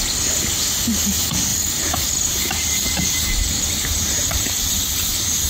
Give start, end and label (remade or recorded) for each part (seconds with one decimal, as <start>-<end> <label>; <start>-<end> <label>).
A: 0.0-1.5 recorded; 1.5-4.8 remade; 4.8-5.5 recorded